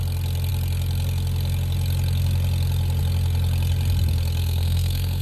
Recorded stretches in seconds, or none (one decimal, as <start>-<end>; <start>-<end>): 0.0-4.4